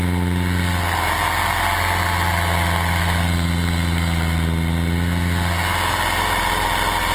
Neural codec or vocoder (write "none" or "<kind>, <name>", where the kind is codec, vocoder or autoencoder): none